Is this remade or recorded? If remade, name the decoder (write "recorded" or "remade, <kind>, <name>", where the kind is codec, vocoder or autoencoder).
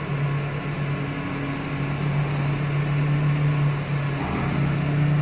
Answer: recorded